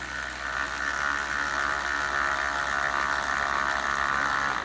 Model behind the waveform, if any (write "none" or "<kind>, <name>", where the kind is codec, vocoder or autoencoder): none